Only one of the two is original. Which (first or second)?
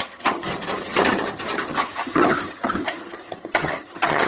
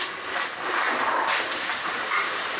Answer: second